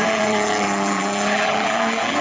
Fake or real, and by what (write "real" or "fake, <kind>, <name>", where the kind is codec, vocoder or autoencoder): fake, vocoder, BigVGAN v2